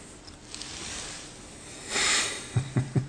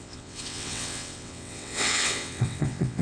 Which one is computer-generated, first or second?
second